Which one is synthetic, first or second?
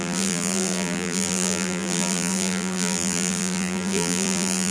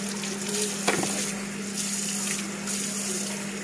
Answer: first